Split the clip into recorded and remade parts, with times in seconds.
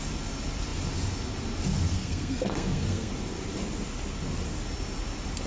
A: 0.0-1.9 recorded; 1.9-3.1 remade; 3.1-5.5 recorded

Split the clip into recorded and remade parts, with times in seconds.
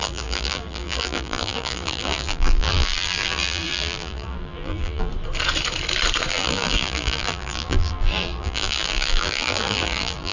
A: 0.0-5.1 remade; 5.1-6.3 recorded; 6.3-10.3 remade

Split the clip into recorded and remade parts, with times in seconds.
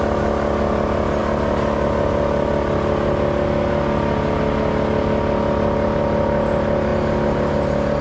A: 0.0-8.0 recorded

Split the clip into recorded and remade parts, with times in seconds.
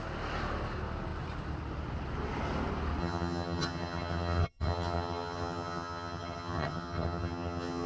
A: 0.0-3.0 recorded; 3.0-7.9 remade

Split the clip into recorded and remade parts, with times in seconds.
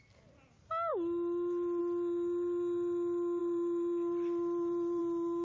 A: 0.0-3.4 recorded; 3.4-5.0 remade; 5.0-5.4 recorded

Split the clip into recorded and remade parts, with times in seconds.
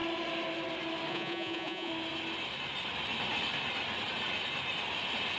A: 0.0-1.1 recorded; 1.1-1.9 remade; 1.9-5.4 recorded